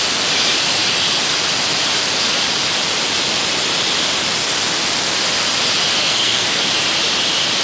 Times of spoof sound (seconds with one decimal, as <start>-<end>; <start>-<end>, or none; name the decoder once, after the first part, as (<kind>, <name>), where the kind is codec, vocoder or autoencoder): 6.0-6.7 (codec, SNAC)